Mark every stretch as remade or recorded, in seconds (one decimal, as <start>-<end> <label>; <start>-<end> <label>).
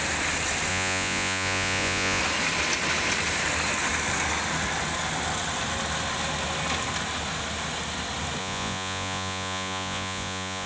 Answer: 0.0-0.7 recorded; 0.7-2.2 remade; 2.2-8.4 recorded; 8.4-10.7 remade